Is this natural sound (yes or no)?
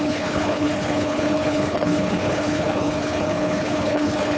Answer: no